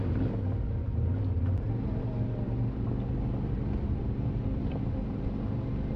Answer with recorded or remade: recorded